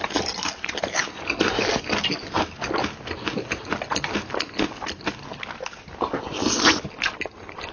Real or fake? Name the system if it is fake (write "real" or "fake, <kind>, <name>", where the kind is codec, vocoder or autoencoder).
real